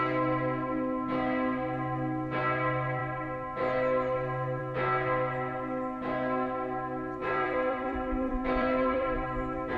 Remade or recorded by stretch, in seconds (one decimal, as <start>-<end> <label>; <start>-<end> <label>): 0.0-7.2 recorded; 7.2-9.8 remade

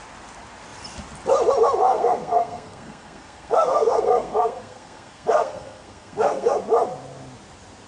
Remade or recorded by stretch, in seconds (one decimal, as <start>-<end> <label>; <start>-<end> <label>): 0.0-1.9 recorded; 1.9-6.6 remade; 6.6-7.9 recorded

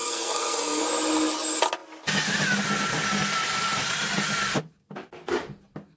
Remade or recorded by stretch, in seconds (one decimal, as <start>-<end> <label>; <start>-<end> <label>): 0.0-0.8 remade; 0.8-6.0 recorded

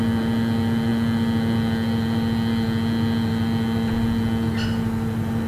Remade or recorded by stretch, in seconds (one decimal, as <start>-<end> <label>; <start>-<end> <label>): 0.0-5.5 recorded

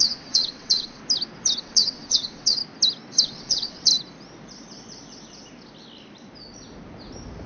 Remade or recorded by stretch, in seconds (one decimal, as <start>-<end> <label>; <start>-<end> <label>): 0.0-1.0 remade; 1.0-1.6 recorded; 1.6-2.6 remade; 2.6-3.2 recorded; 3.2-3.9 remade; 3.9-7.5 recorded

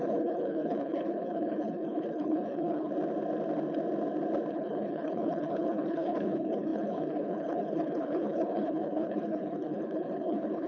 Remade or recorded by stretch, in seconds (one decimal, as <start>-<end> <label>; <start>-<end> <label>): 0.0-2.9 remade; 2.9-4.5 recorded; 4.5-10.7 remade